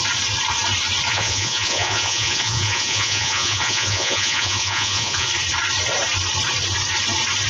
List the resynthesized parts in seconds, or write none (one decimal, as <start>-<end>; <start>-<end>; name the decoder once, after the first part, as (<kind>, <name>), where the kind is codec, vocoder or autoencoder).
1.1-5.3 (vocoder, Vocos)